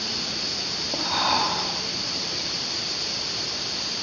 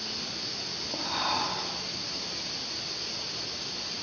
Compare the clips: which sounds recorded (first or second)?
second